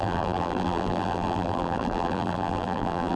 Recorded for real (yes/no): no